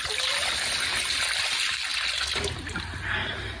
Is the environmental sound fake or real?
real